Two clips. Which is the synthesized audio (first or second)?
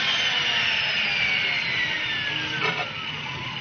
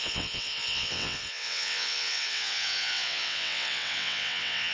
second